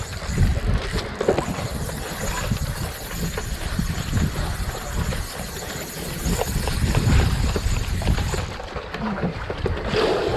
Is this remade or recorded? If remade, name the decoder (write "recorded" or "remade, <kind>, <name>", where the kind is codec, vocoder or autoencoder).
remade, vocoder, BigVGAN v2